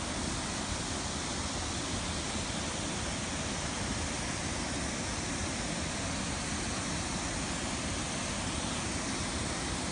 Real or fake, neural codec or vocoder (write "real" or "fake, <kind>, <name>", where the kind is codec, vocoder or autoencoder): real